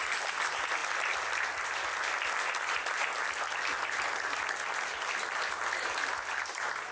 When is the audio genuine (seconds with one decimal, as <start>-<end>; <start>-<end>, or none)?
0.0-6.9